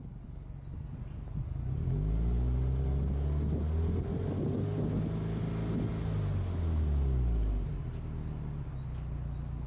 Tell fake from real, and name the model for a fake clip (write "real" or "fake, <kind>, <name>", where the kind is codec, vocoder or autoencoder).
real